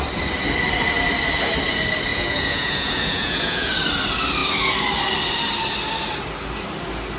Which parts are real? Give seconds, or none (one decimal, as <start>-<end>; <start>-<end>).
0.0-2.1; 3.7-7.2